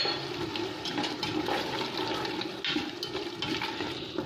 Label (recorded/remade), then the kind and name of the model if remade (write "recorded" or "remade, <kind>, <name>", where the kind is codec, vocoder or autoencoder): recorded